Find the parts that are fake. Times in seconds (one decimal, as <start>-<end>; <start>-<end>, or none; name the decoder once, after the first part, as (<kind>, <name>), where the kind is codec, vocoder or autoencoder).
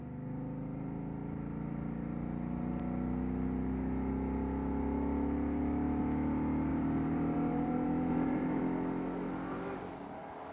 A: 6.7-8.6 (vocoder, BigVGAN v2)